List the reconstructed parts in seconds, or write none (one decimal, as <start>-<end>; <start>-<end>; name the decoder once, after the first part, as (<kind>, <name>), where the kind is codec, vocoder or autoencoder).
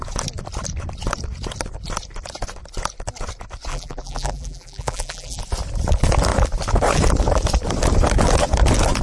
3.7-5.4 (vocoder, BigVGAN v2)